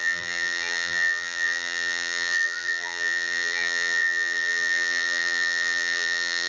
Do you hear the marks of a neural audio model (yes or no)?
yes